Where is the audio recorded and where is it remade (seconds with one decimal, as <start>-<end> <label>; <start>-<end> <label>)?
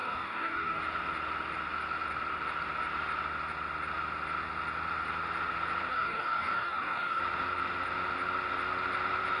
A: 0.0-0.8 remade; 0.8-5.9 recorded; 5.9-7.2 remade; 7.2-9.4 recorded